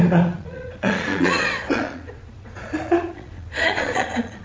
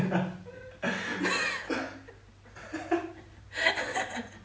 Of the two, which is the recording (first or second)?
second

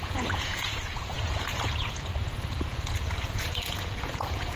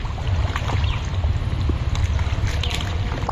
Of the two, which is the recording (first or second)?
second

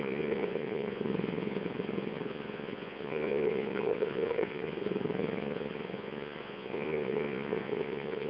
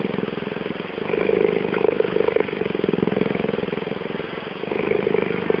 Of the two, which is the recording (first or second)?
second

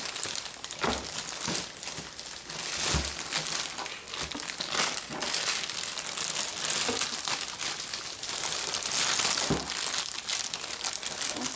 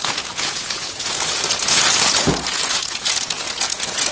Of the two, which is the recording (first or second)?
first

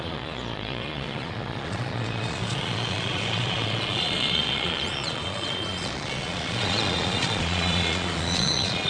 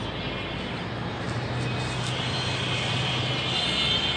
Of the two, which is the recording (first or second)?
second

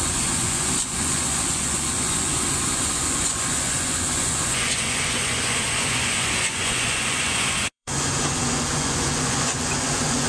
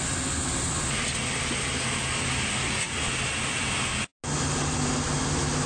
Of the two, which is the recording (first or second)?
second